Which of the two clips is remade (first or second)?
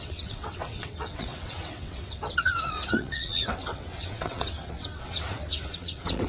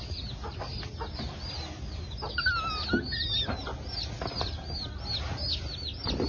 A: first